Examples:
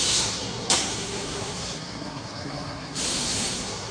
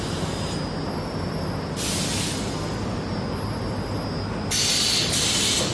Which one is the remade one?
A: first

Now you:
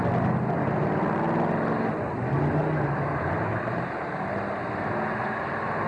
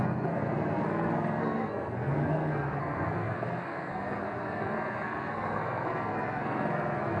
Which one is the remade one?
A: second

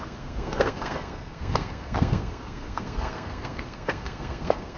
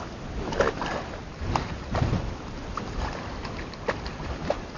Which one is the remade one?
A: first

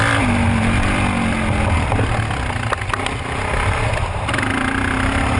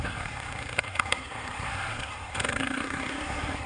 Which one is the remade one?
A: second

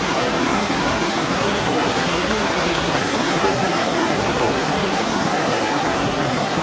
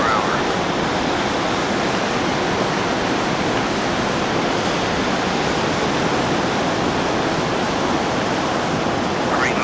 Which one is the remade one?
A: first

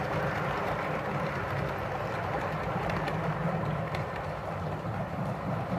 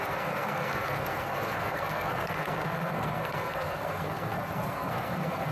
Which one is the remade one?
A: second